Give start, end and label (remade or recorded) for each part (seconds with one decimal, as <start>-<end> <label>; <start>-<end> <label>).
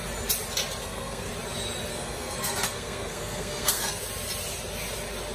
0.0-0.8 recorded; 0.8-1.3 remade; 1.3-1.9 recorded; 1.9-4.0 remade; 4.0-5.3 recorded